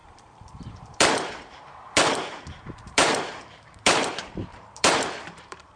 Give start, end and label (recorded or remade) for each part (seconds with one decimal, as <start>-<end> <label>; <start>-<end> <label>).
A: 0.0-1.1 remade; 1.1-2.3 recorded; 2.3-4.1 remade; 4.1-4.5 recorded; 4.5-5.8 remade